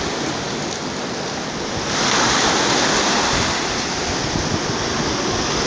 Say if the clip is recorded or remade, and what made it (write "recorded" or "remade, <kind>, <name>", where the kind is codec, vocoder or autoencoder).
recorded